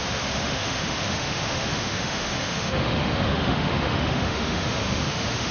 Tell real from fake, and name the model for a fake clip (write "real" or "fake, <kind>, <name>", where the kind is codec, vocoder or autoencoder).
fake, autoencoder, DAC-VAE